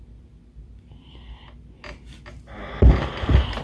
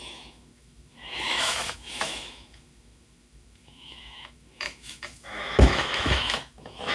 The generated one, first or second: second